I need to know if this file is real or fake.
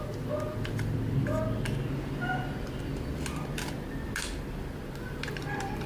real